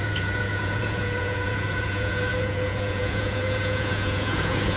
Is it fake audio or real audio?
fake